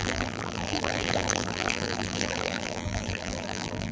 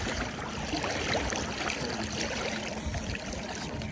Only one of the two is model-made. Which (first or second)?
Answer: first